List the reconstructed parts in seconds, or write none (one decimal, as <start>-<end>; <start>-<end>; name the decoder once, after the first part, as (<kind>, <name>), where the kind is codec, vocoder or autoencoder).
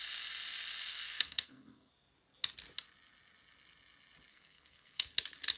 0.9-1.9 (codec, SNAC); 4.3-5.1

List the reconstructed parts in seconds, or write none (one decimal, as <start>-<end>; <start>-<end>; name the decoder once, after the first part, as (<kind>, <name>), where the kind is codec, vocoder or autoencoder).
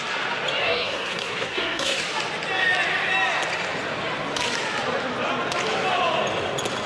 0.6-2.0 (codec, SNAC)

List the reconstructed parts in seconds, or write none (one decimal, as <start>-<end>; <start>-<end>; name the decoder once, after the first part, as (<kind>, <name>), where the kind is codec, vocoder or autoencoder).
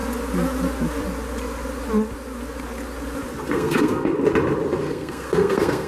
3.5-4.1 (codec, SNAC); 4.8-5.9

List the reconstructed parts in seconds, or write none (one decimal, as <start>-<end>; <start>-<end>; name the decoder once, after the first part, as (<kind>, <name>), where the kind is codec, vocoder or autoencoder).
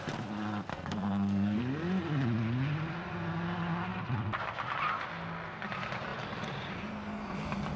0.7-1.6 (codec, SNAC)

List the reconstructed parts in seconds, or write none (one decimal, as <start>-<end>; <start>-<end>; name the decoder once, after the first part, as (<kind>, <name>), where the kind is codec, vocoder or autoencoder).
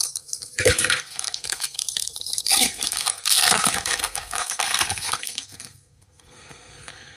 0.0-7.2 (codec, SNAC)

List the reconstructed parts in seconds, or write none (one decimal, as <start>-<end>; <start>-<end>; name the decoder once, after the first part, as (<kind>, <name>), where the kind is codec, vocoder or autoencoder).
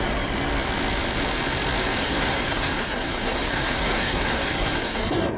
2.0-5.4 (codec, SNAC)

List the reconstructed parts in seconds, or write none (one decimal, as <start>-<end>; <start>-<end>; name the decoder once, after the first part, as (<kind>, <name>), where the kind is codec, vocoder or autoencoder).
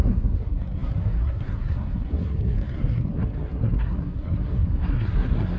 0.0-5.6 (codec, SNAC)